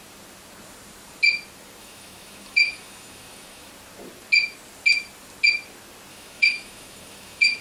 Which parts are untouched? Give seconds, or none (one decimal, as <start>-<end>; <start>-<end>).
0.0-1.8; 3.7-6.1